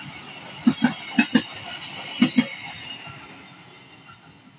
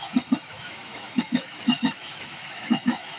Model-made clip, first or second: second